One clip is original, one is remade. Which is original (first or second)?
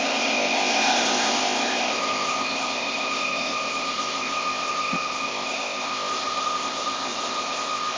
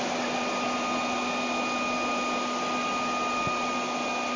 second